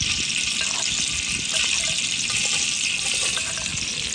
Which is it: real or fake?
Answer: real